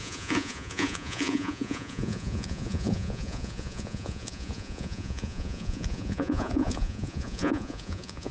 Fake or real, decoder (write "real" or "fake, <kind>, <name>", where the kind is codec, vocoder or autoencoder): fake, vocoder, Vocos